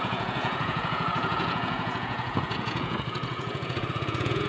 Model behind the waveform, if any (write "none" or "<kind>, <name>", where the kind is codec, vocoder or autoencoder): vocoder, Vocos